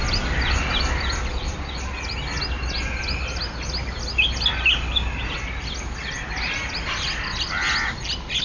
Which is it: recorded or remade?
recorded